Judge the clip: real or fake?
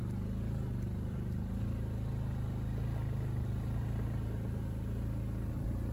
real